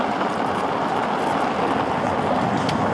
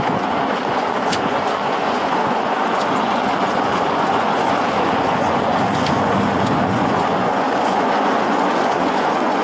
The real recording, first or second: first